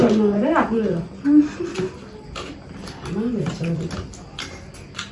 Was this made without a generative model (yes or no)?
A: yes